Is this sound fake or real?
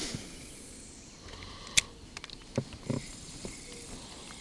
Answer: real